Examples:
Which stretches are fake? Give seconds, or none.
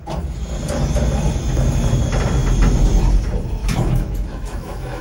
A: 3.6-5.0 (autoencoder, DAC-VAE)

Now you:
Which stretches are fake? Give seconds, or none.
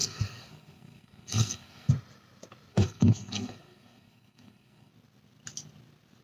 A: 0.0-1.9 (codec, SNAC); 2.7-4.9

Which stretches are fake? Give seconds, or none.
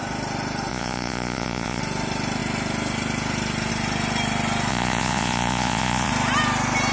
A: 0.7-1.8 (vocoder, Vocos); 4.7-6.1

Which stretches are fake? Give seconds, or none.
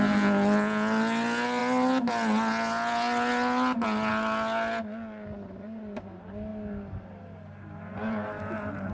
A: none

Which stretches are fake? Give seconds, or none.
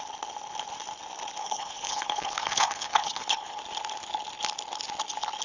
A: 1.4-3.6 (codec, HILCodec)